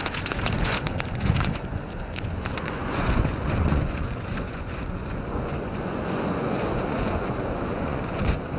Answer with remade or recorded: remade